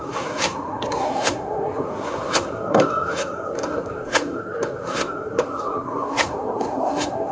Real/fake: fake